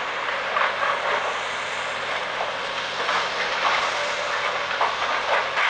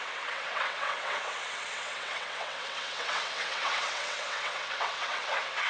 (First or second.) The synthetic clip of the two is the second